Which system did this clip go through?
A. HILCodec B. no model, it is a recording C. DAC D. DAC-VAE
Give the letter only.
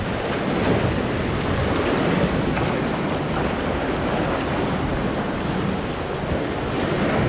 B